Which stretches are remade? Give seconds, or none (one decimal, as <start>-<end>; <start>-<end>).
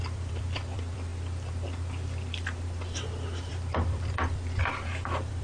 0.0-1.1; 3.5-5.4